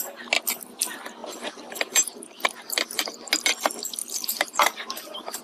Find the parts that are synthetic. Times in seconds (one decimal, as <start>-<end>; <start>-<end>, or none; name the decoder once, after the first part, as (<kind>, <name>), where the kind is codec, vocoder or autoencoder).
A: 1.2-3.3 (vocoder, BigVGAN v2); 4.0-5.4